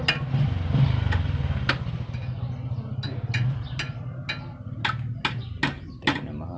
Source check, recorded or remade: recorded